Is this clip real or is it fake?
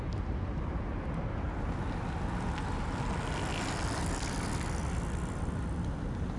real